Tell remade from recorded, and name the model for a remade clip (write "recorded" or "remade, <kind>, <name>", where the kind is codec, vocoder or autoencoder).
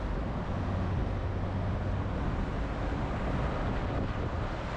recorded